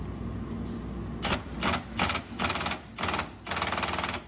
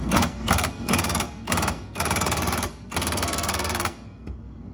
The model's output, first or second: second